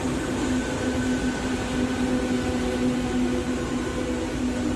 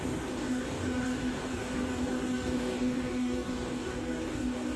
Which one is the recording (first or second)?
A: first